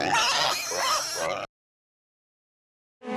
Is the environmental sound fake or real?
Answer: real